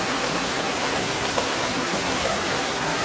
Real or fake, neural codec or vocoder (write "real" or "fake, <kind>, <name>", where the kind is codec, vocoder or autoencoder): fake, codec, SNAC